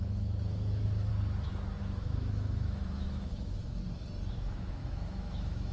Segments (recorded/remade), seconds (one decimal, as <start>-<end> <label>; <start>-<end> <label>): 0.0-1.1 remade; 1.1-1.8 recorded; 1.8-3.8 remade; 3.8-4.3 recorded; 4.3-5.7 remade